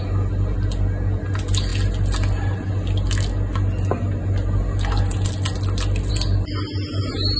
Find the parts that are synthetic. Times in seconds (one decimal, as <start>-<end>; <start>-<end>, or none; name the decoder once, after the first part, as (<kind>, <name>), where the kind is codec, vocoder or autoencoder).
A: none